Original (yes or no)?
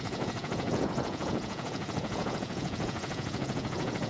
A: no